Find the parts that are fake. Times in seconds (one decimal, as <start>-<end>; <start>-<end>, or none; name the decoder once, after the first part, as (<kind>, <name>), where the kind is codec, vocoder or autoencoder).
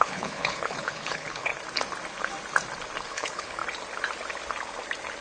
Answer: 0.0-1.5 (codec, HILCodec); 3.1-3.6